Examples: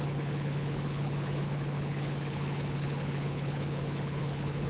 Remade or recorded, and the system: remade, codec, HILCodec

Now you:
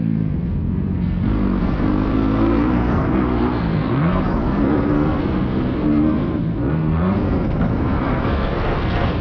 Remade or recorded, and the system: remade, codec, SNAC